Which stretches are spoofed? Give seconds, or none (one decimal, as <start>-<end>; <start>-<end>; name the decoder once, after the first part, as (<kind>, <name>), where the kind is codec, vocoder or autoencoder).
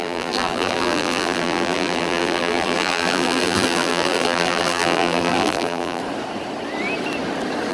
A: 0.0-6.0 (vocoder, BigVGAN v2)